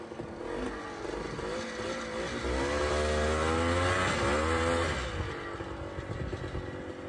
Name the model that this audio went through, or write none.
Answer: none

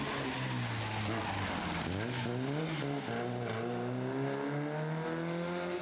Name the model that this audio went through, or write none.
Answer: none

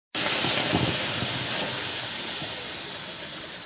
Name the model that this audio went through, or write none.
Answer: none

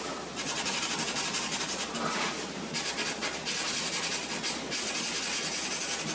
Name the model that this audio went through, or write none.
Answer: none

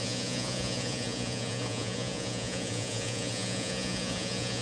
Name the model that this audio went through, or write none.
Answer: vocoder, Vocos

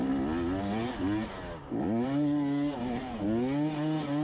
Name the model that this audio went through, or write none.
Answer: none